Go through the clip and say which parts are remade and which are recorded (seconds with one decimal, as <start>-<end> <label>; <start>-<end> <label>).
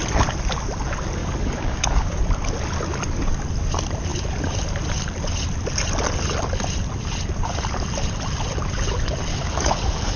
0.0-1.2 recorded; 1.2-2.2 remade; 2.2-9.3 recorded; 9.3-10.2 remade